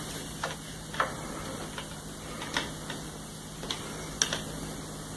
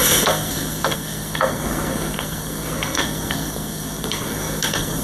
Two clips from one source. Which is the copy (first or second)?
second